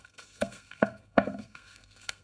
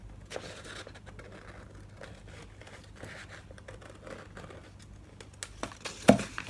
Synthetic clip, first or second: first